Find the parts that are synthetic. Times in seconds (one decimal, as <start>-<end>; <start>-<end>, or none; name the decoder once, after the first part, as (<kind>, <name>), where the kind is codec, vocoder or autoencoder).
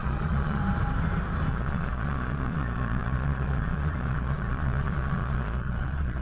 0.0-0.6 (vocoder, Vocos); 1.5-6.2